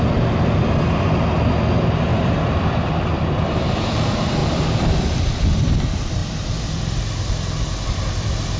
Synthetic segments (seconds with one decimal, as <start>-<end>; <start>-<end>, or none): 2.1-2.7; 4.4-5.3; 6.2-7.3